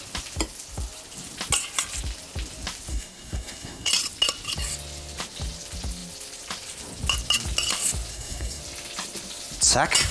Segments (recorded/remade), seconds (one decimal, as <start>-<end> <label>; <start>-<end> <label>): 0.0-2.9 recorded; 2.9-3.9 remade; 3.9-8.1 recorded; 8.1-8.6 remade; 8.6-10.1 recorded